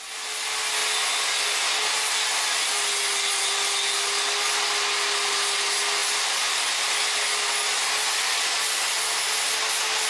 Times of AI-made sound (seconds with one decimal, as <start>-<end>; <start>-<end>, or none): none